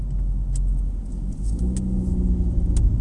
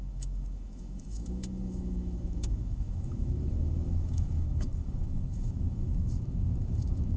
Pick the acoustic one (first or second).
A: first